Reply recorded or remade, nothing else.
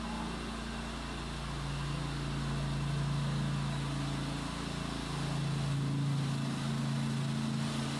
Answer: recorded